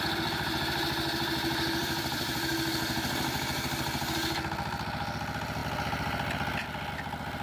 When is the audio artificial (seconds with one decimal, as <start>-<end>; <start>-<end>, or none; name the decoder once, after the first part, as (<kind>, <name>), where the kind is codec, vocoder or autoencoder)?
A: 1.8-2.5 (vocoder, BigVGAN v2)